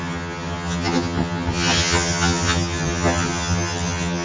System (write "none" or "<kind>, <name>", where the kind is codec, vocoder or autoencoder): vocoder, HiFi-GAN